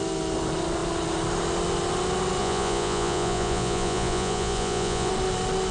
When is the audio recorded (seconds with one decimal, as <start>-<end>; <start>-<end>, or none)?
0.0-2.4; 5.1-5.7